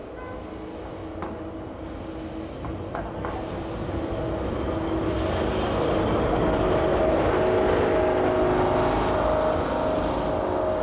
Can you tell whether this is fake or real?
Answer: real